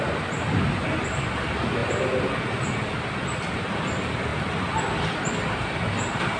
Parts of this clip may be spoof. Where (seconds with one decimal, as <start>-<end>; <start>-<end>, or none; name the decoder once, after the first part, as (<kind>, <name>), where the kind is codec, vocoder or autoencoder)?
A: none